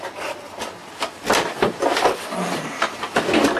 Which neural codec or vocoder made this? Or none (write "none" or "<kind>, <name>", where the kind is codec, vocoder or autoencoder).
none